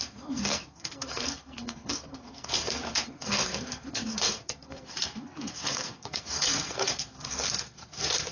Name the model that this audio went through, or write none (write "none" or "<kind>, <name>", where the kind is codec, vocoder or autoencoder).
codec, SNAC